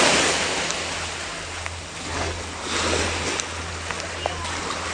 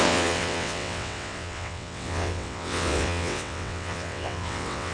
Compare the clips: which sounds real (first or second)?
first